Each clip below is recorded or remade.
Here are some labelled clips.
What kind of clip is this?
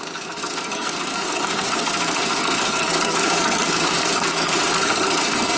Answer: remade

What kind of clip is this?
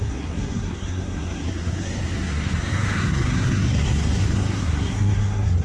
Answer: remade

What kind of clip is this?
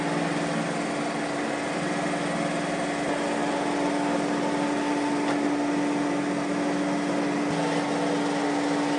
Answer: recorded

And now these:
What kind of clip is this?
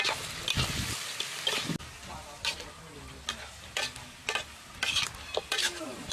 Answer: recorded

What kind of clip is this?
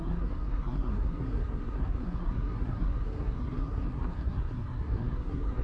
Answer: remade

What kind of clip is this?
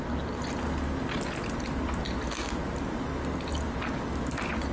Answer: recorded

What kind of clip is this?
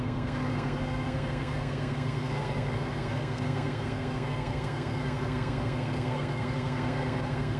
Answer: remade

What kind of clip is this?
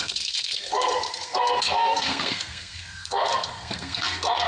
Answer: remade